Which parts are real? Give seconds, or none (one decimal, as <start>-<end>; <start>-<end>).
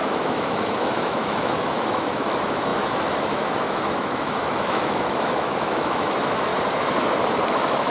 6.5-7.5